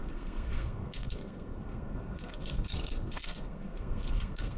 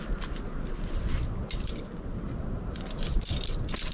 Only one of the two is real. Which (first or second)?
second